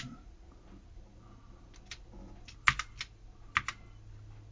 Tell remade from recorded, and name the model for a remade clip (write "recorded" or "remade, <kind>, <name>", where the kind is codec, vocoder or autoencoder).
recorded